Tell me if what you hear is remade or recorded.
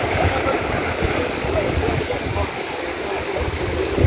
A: remade